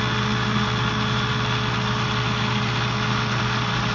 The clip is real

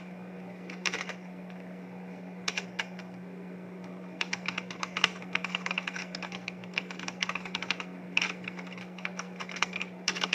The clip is fake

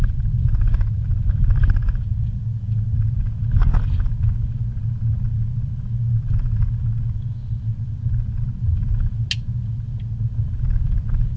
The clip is real